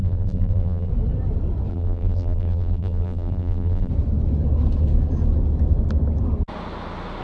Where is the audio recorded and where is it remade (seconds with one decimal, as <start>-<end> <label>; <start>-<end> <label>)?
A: 0.0-0.9 remade; 0.9-1.7 recorded; 1.7-3.9 remade; 3.9-7.2 recorded